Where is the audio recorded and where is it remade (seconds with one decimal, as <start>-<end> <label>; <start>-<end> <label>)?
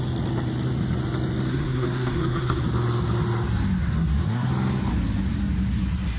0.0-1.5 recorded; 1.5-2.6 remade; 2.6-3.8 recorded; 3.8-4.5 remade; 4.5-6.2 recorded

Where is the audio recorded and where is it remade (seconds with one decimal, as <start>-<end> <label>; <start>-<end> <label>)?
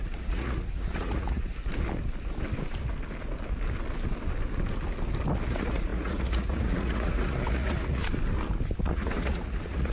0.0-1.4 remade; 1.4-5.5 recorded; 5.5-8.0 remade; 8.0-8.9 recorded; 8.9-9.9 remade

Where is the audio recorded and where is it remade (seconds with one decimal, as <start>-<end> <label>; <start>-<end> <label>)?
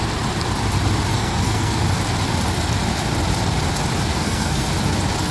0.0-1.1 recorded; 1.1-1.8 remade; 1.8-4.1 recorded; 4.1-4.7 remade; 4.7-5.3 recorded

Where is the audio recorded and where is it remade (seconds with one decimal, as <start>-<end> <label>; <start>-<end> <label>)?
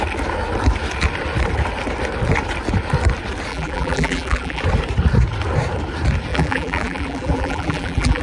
0.0-3.5 recorded; 3.5-4.6 remade; 4.6-6.3 recorded; 6.3-8.2 remade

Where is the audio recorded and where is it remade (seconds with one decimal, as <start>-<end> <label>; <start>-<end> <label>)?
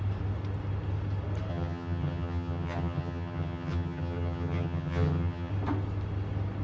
0.0-1.5 recorded; 1.5-5.5 remade; 5.5-6.6 recorded